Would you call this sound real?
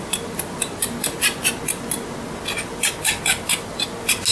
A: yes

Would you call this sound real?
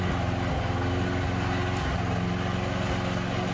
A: yes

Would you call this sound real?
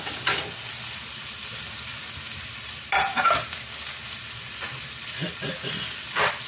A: yes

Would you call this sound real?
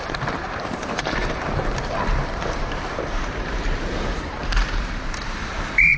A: no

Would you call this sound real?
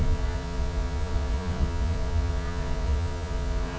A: no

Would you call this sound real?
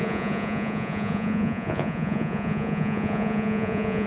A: no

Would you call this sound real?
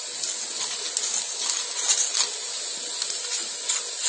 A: yes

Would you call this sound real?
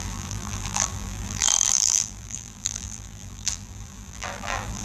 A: no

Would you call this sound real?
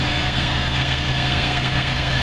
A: no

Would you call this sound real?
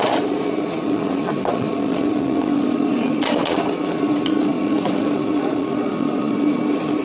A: no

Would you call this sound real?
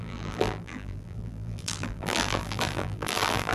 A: no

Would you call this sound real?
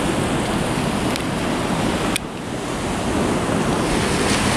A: yes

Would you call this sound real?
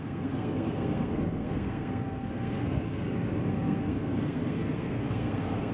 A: no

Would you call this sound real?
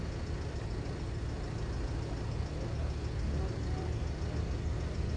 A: yes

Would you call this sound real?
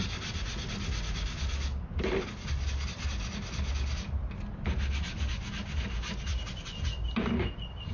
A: yes